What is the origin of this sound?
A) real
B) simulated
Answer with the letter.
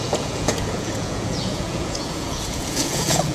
B